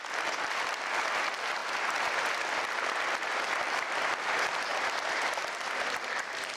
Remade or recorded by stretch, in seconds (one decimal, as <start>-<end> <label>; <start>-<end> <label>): 0.0-1.6 recorded; 1.6-2.8 remade; 2.8-4.7 recorded; 4.7-5.2 remade; 5.2-6.6 recorded